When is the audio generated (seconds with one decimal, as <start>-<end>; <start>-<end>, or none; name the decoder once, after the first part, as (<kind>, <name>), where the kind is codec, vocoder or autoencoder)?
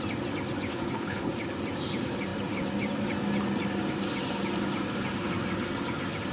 0.7-1.3 (codec, HILCodec)